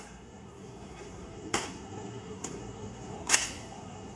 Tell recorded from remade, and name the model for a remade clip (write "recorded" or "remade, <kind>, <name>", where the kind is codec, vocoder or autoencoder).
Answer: remade, codec, SNAC